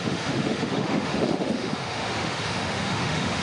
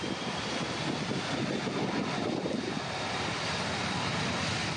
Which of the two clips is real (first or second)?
second